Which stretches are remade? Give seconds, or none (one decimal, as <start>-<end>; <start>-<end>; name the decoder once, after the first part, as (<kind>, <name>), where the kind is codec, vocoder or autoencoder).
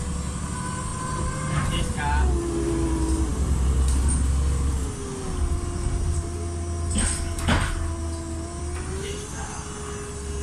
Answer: none